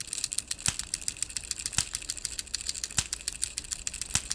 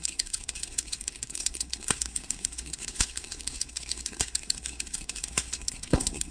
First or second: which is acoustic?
first